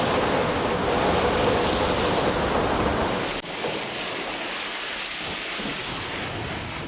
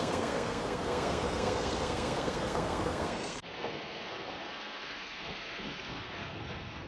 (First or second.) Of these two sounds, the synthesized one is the second